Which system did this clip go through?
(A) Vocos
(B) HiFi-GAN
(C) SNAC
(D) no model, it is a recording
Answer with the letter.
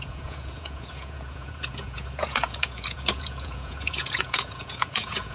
A